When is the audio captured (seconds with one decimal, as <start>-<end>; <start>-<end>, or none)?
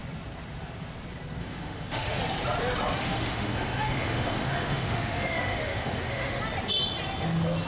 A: 0.0-1.4; 2.2-3.0; 6.4-7.7